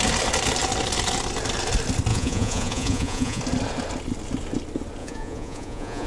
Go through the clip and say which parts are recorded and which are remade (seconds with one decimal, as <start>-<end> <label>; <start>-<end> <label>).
0.0-2.1 recorded; 2.1-3.4 remade; 3.4-5.0 recorded; 5.0-6.1 remade